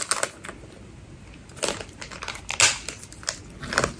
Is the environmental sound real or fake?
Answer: real